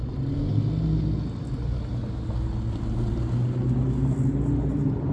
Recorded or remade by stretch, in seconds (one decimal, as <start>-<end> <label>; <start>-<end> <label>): 0.0-5.1 recorded

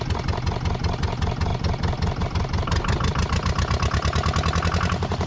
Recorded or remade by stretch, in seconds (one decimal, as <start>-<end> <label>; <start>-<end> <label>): 0.0-5.3 recorded